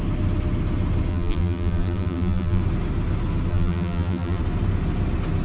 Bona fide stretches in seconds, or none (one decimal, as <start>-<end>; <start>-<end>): 0.0-1.1; 2.6-3.5; 4.4-5.4